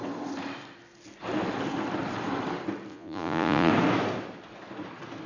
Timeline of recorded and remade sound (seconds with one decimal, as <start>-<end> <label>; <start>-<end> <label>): 0.0-2.9 recorded; 2.9-3.7 remade; 3.7-5.3 recorded